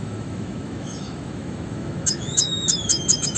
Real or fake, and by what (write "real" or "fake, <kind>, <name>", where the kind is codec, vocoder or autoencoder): fake, autoencoder, DAC-VAE